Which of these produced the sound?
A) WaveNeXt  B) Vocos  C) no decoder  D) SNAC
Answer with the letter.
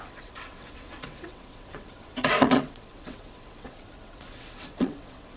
A